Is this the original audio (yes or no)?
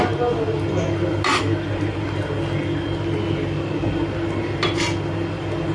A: yes